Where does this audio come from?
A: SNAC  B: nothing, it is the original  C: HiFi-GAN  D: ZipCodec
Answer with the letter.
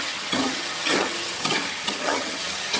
C